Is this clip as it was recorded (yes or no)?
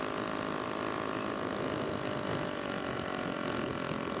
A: yes